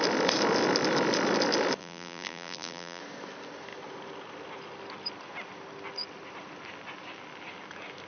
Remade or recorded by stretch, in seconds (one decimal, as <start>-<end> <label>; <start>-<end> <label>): 0.0-1.8 recorded; 1.8-3.0 remade; 3.0-8.1 recorded